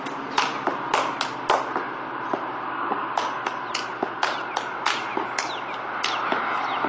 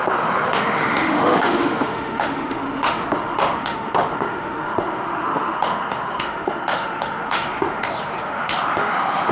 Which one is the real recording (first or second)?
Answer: first